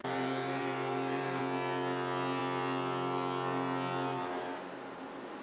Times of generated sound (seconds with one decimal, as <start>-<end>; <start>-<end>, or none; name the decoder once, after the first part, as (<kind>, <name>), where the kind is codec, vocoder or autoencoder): 0.0-1.4 (vocoder, BigVGAN v2)